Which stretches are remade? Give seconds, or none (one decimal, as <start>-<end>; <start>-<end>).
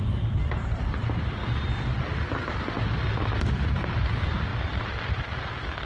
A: 0.0-5.9